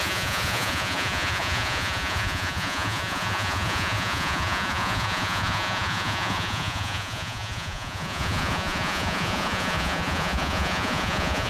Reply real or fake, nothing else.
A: fake